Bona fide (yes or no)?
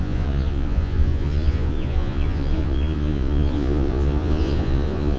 no